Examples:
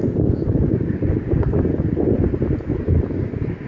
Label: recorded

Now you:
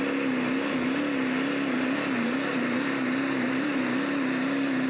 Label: recorded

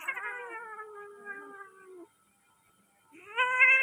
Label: recorded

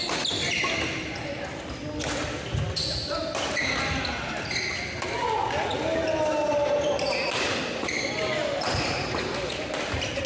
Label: recorded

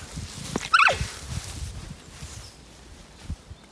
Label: recorded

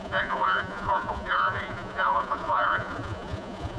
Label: remade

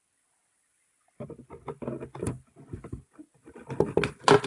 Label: recorded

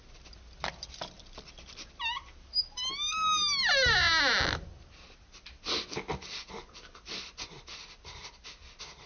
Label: recorded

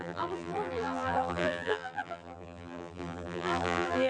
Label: remade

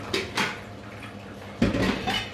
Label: recorded